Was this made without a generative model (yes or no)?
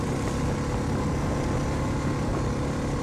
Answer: yes